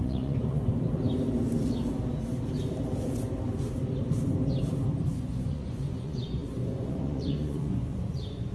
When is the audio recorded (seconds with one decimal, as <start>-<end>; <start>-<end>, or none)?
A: 0.7-5.1